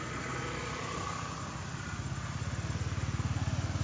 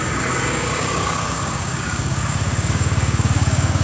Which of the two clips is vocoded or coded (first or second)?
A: second